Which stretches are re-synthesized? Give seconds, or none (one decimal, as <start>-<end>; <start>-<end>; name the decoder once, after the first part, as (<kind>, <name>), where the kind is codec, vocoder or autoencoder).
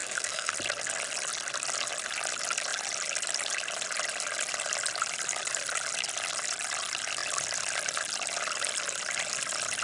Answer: 0.0-0.5 (codec, SNAC)